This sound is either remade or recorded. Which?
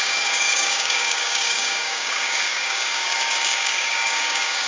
remade